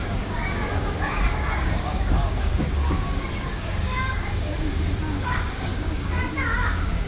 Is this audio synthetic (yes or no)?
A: yes